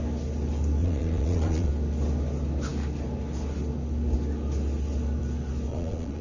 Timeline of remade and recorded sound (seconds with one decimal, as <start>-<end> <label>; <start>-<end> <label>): 0.0-0.8 recorded; 0.8-1.7 remade; 1.7-5.7 recorded; 5.7-6.2 remade